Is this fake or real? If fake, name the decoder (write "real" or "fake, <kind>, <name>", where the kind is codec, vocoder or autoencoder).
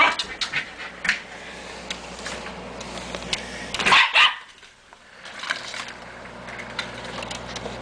real